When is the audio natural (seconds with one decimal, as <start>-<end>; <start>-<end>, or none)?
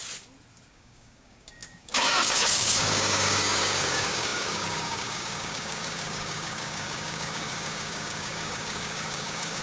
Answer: 0.0-0.7